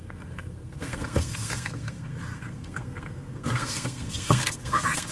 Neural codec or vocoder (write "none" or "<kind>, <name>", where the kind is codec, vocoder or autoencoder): codec, SNAC